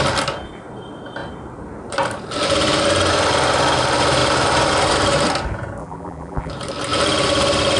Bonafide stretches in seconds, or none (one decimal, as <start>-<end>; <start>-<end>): 0.0-5.8; 6.5-7.8